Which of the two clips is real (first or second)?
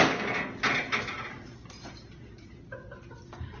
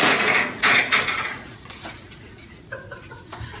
first